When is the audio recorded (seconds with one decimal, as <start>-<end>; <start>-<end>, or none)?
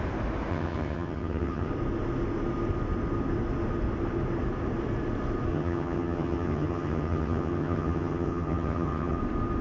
0.0-0.5; 1.7-5.5; 9.2-9.6